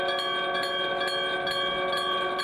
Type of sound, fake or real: real